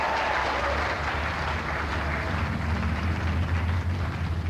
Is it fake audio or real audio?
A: real